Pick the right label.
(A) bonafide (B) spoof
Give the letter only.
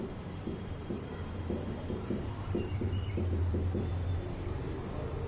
B